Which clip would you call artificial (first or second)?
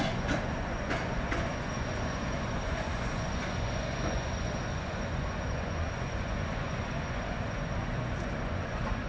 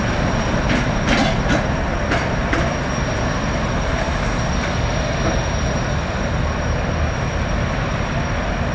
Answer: first